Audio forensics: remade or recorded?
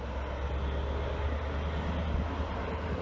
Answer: recorded